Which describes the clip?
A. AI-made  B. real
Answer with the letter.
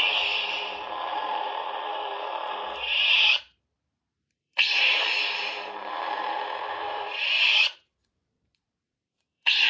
A